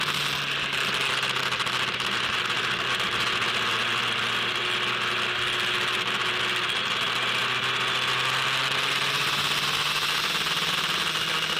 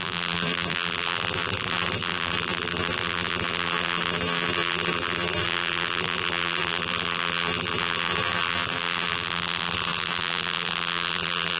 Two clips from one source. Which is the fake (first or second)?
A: second